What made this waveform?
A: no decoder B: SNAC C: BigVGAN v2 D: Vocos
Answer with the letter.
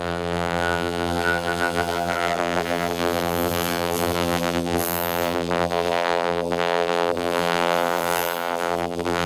C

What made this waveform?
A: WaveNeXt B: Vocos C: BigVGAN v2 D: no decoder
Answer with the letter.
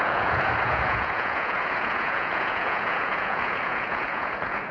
B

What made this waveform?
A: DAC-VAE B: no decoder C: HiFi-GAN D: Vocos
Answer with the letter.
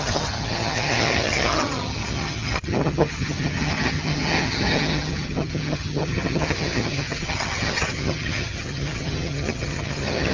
C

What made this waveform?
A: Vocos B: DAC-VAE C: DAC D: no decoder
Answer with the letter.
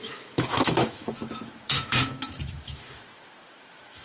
B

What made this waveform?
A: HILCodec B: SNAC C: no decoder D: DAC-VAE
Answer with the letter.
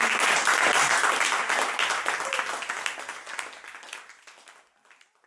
C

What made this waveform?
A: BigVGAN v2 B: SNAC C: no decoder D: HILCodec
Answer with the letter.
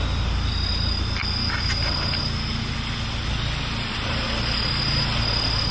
C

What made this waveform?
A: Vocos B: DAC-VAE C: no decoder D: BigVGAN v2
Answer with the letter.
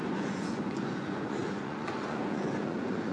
A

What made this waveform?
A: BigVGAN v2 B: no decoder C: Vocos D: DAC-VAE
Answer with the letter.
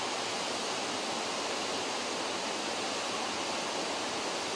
B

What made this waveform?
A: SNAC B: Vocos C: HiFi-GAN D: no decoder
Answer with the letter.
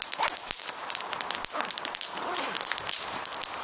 D